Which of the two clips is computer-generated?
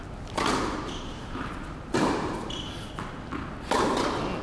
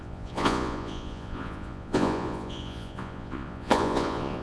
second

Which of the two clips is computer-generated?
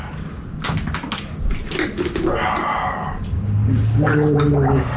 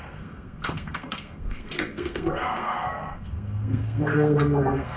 second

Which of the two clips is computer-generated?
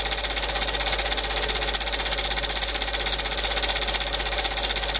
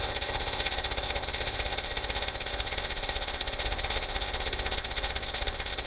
second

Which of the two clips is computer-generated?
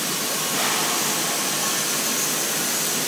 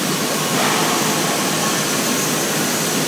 second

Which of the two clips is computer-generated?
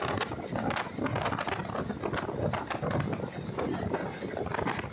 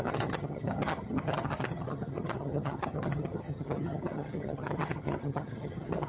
second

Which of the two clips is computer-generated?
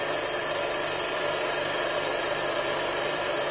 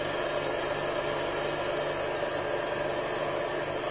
first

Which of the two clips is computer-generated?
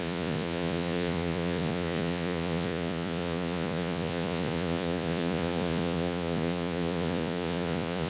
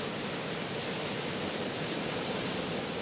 first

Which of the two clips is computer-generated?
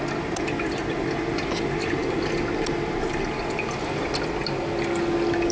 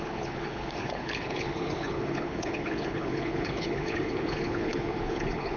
second